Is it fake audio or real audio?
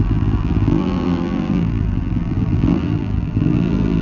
fake